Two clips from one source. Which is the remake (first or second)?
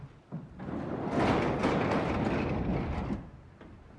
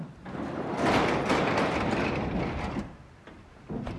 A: second